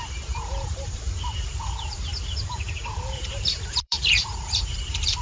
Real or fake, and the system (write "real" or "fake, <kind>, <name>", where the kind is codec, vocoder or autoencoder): fake, vocoder, BigVGAN v2